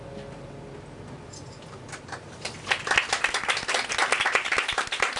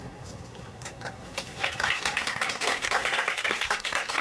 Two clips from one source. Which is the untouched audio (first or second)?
first